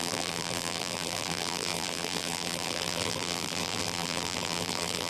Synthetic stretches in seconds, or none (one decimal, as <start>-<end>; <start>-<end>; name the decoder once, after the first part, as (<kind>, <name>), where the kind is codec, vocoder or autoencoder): 0.0-5.1 (vocoder, BigVGAN v2)